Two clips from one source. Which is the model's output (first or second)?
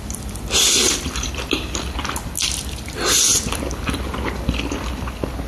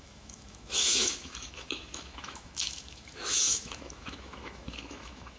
second